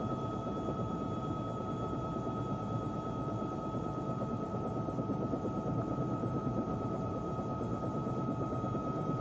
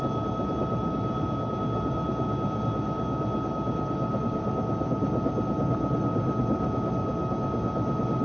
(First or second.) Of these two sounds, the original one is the second